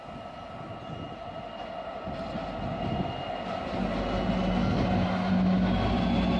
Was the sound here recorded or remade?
recorded